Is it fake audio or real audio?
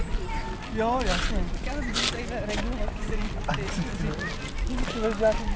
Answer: real